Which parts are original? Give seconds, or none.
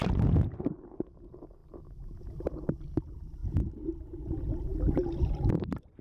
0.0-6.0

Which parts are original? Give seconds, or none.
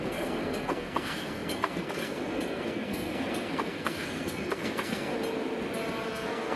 5.1-6.1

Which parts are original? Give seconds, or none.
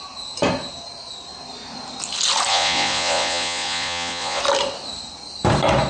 0.0-2.5; 4.4-5.9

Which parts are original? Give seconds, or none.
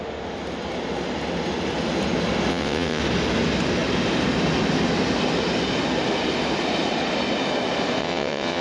0.0-2.5; 3.0-8.0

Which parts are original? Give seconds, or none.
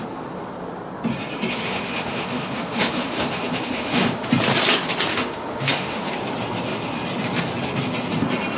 0.0-1.5; 4.3-5.1; 6.1-8.6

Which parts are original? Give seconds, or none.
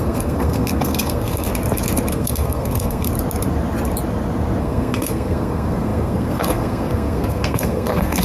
1.5-2.1; 3.1-4.6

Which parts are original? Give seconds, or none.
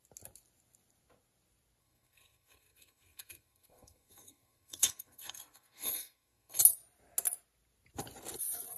0.0-1.8; 6.6-8.8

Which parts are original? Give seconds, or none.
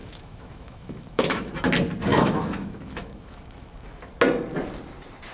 1.5-2.1; 4.1-5.3